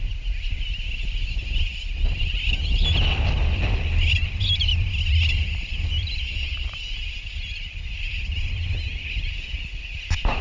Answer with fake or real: real